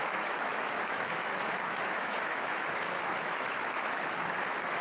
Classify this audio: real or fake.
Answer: fake